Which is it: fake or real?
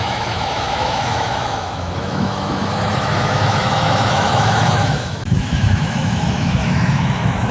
fake